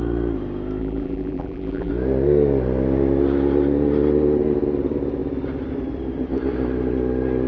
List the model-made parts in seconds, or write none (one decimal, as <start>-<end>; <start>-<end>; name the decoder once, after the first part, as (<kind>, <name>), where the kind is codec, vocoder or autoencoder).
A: 0.8-1.9 (vocoder, BigVGAN v2)